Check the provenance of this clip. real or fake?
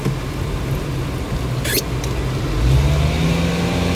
real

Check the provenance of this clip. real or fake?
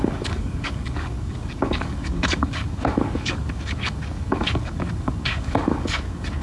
fake